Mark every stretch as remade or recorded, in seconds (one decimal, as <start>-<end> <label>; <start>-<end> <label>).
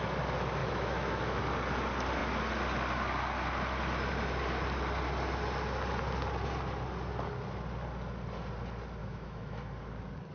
0.0-0.6 recorded; 0.6-1.4 remade; 1.4-9.0 recorded; 9.0-9.6 remade; 9.6-10.3 recorded